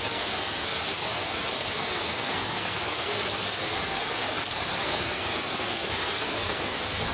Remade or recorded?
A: remade